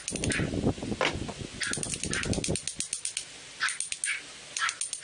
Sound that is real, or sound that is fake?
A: real